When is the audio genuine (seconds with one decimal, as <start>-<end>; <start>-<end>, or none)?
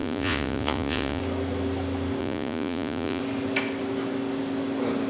1.2-2.2; 3.2-5.1